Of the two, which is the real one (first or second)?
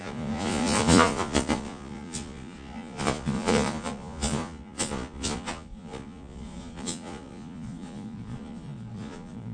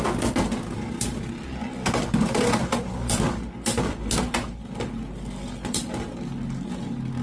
second